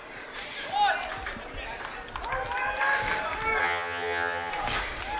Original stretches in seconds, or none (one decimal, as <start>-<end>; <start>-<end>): 0.0-3.6; 4.5-5.2